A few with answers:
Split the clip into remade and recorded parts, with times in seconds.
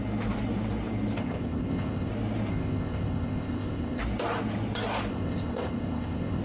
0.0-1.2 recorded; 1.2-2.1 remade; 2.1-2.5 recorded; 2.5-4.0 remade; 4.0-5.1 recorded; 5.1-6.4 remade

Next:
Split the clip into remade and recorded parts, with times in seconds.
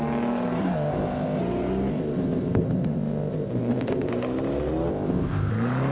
0.0-0.6 recorded; 0.6-1.4 remade; 1.4-1.9 recorded; 1.9-4.1 remade; 4.1-4.9 recorded; 4.9-5.5 remade; 5.5-5.9 recorded